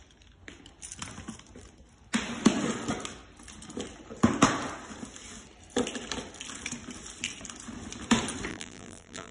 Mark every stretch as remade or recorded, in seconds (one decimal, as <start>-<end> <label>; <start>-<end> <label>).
0.0-8.5 recorded; 8.5-9.3 remade